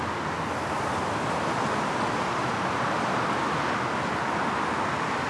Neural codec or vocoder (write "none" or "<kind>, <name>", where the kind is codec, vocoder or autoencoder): none